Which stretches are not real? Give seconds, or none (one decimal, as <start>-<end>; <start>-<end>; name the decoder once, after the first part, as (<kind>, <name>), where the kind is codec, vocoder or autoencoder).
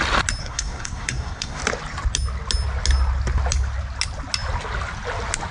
0.4-1.6 (codec, SNAC)